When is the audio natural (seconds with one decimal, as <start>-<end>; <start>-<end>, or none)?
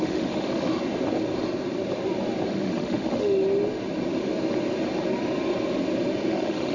0.7-2.5; 3.4-6.3